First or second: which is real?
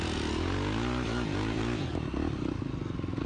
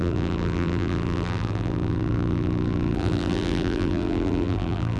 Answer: first